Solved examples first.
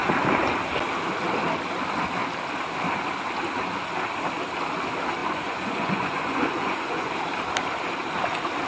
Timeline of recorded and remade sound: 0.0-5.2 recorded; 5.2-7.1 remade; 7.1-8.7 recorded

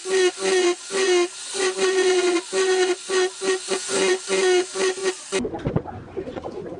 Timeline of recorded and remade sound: 0.0-5.0 remade; 5.0-5.7 recorded; 5.7-6.8 remade

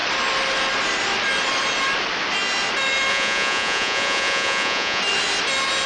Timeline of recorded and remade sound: 0.0-3.1 recorded; 3.1-5.0 remade; 5.0-5.9 recorded

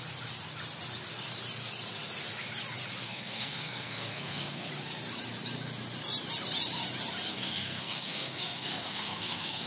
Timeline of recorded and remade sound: 0.0-3.0 recorded; 3.0-4.7 remade; 4.7-7.3 recorded; 7.3-9.7 remade

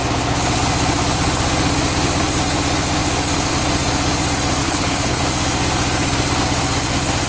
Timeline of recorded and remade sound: 0.0-4.6 recorded; 4.6-5.2 remade; 5.2-7.3 recorded

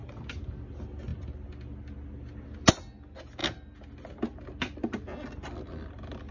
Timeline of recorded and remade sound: 0.0-6.3 recorded

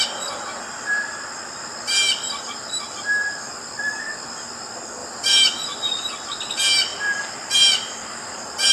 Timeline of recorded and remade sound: 0.0-2.0 recorded; 2.0-3.7 remade; 3.7-5.0 recorded; 5.0-6.0 remade; 6.0-6.9 recorded; 6.9-8.7 remade

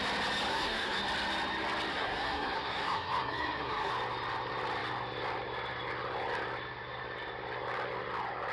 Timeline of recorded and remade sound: 0.0-0.5 recorded; 0.5-1.0 remade; 1.0-1.9 recorded; 1.9-3.9 remade; 3.9-8.5 recorded